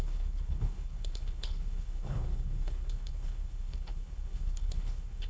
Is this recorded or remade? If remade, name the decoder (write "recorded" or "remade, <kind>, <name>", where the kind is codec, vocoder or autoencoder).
remade, codec, HILCodec